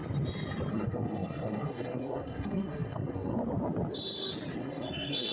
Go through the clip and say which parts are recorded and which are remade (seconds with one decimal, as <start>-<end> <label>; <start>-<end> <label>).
0.0-0.7 recorded; 0.7-3.4 remade; 3.4-4.6 recorded; 4.6-5.3 remade